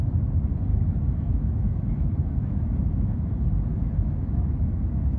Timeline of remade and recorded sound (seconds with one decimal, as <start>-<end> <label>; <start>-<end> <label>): 0.0-0.7 recorded; 0.7-3.3 remade; 3.3-3.7 recorded; 3.7-5.2 remade